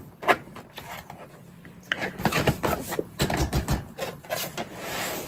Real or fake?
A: real